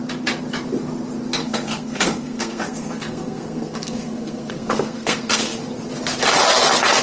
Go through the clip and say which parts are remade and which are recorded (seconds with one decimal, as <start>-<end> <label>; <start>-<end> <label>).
0.0-1.4 recorded; 1.4-5.6 remade; 5.6-7.0 recorded